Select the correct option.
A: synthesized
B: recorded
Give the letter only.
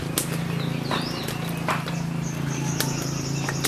B